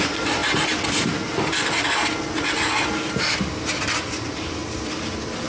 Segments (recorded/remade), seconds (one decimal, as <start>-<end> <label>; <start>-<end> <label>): 0.0-5.5 recorded